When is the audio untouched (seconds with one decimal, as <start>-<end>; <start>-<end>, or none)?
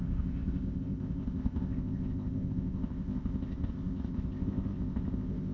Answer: none